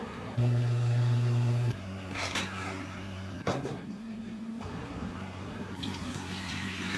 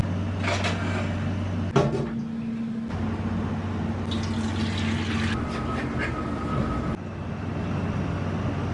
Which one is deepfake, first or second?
first